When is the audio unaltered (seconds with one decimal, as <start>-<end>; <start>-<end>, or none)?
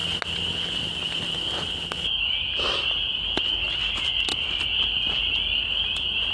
0.0-6.3